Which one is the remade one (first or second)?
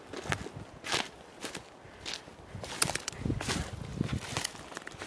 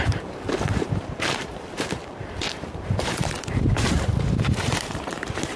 second